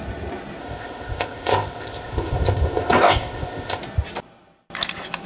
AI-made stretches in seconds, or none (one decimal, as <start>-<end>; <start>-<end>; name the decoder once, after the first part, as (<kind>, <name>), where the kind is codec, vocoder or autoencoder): 0.6-3.8 (codec, ZipCodec)